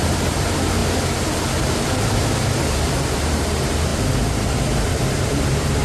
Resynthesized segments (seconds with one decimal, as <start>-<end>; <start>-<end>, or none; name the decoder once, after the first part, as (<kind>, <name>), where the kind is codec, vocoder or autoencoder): 0.0-0.8 (vocoder, BigVGAN v2); 1.6-5.8